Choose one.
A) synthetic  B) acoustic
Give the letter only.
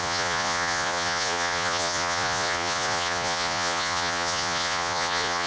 A